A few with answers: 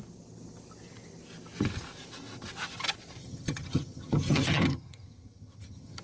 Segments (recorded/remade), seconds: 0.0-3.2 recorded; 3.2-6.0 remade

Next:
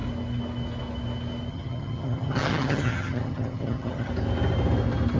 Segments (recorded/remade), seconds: 0.0-1.5 recorded; 1.5-4.1 remade; 4.1-5.2 recorded

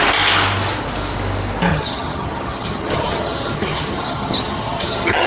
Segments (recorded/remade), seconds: 0.0-1.7 recorded; 1.7-5.3 remade

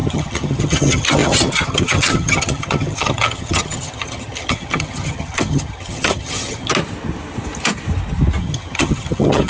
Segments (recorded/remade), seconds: 0.0-6.7 remade; 6.7-8.4 recorded; 8.4-9.5 remade

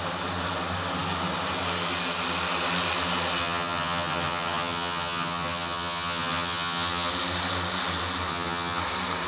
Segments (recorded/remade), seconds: 0.0-3.4 recorded; 3.4-7.1 remade; 7.1-8.3 recorded; 8.3-8.8 remade; 8.8-9.3 recorded

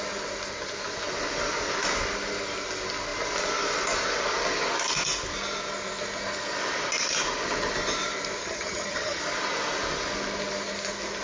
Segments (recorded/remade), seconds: 0.0-8.4 recorded; 8.4-9.2 remade; 9.2-11.2 recorded